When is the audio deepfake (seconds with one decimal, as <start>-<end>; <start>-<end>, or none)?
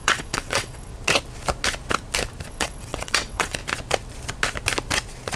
0.0-0.9; 2.5-3.6